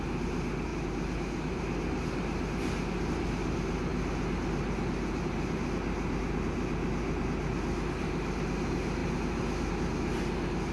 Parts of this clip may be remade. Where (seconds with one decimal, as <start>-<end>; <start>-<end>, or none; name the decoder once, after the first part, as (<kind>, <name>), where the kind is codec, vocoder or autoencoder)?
none